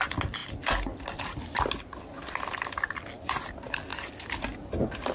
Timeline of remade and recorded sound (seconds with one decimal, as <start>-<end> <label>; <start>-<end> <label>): 0.0-5.1 recorded